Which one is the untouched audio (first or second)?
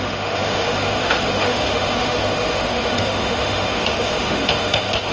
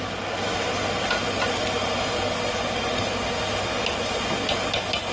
second